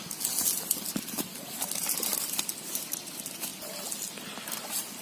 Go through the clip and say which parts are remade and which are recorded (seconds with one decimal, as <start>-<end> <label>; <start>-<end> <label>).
0.0-5.0 recorded